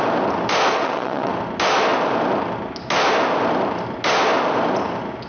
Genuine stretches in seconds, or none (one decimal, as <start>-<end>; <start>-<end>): 0.0-0.7; 1.3-5.3